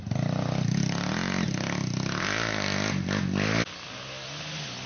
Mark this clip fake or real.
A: real